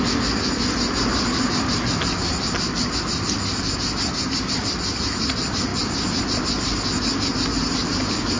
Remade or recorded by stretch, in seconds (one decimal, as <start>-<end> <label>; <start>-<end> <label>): 0.0-8.4 recorded